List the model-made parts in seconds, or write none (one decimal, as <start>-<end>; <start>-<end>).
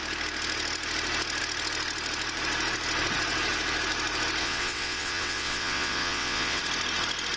4.4-6.6